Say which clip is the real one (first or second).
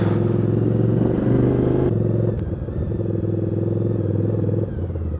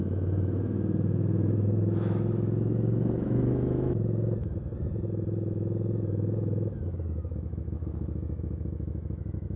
first